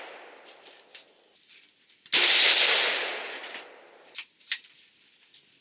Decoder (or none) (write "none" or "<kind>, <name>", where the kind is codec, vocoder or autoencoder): none